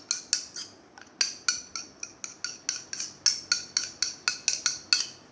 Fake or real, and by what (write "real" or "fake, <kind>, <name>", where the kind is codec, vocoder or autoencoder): real